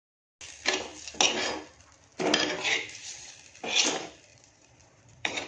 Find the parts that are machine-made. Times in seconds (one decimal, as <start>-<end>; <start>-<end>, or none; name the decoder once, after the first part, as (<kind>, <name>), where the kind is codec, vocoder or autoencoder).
4.3-5.5 (vocoder, Vocos)